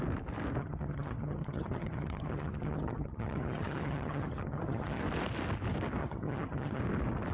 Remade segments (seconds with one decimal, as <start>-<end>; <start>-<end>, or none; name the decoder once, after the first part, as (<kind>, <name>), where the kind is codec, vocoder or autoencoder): 0.6-5.0 (vocoder, HiFi-GAN); 6.0-6.8